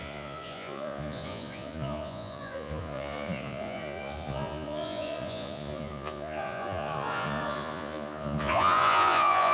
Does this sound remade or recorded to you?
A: remade